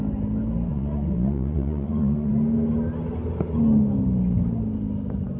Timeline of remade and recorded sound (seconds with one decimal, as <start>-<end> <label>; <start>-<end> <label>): 0.0-0.7 recorded; 0.7-2.3 remade; 2.3-5.4 recorded